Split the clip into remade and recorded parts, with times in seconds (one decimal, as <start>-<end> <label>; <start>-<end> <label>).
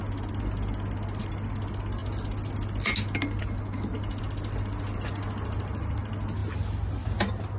0.0-7.6 recorded